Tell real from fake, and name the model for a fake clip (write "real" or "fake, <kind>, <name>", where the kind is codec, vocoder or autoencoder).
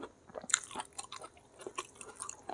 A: fake, vocoder, BigVGAN v2